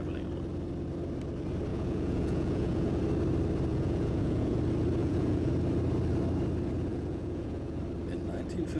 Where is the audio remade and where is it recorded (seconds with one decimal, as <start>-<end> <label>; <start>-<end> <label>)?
0.0-1.7 recorded; 1.7-3.0 remade; 3.0-3.7 recorded; 3.7-4.6 remade; 4.6-5.0 recorded; 5.0-5.5 remade; 5.5-6.9 recorded; 6.9-7.8 remade; 7.8-8.8 recorded

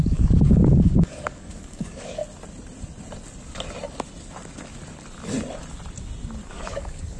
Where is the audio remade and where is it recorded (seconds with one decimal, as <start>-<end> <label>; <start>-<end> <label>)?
0.0-2.2 remade; 2.2-6.5 recorded; 6.5-7.2 remade

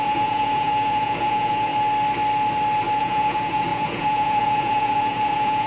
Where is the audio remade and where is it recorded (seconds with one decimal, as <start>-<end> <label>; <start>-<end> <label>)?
0.0-1.7 remade; 1.7-3.0 recorded; 3.0-5.7 remade